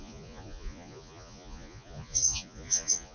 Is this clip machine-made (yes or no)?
yes